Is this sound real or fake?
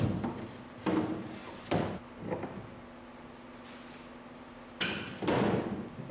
real